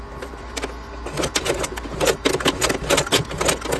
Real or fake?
real